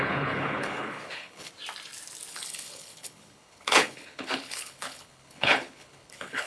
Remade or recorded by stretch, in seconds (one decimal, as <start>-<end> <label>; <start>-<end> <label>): 0.0-1.5 remade; 1.5-2.3 recorded; 2.3-6.5 remade